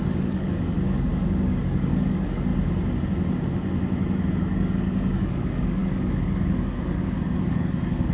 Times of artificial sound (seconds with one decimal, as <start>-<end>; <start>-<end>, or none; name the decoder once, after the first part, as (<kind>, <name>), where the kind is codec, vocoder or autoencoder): 0.0-2.5 (codec, DAC); 4.3-8.1